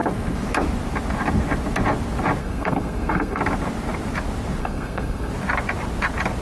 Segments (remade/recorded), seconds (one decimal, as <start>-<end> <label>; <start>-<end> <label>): 0.0-2.4 recorded; 2.4-3.4 remade; 3.4-4.6 recorded; 4.6-5.3 remade; 5.3-6.4 recorded